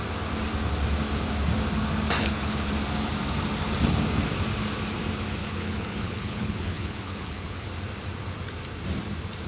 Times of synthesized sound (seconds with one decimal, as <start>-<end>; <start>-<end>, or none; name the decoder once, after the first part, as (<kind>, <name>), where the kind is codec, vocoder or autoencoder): 2.2-2.7 (codec, HILCodec); 5.4-7.7